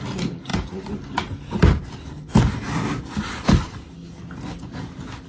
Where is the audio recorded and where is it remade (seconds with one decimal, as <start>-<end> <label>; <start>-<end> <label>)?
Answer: 0.0-5.3 recorded